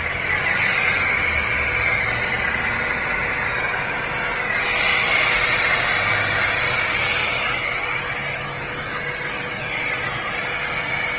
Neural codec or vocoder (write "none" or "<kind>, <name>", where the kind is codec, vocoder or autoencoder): none